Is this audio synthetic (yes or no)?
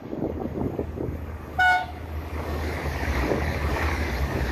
yes